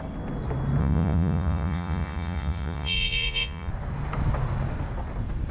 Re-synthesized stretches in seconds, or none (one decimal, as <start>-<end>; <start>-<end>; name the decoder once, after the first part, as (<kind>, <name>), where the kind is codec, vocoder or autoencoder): 0.8-3.7 (vocoder, Vocos)